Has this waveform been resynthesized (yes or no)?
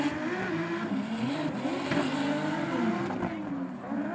no